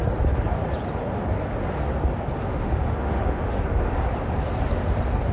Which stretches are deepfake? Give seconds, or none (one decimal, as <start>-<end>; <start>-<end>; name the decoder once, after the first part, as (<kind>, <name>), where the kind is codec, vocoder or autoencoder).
2.5-3.6 (autoencoder, DAC-VAE)